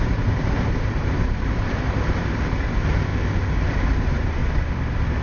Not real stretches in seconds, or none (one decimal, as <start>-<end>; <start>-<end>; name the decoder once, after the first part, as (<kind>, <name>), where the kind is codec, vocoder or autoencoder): 0.0-3.1 (vocoder, BigVGAN v2); 4.0-4.4